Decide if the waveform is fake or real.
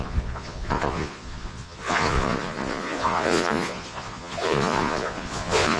fake